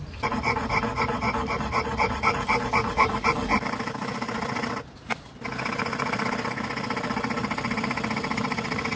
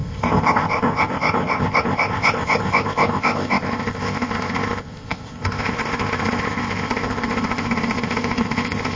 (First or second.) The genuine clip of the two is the first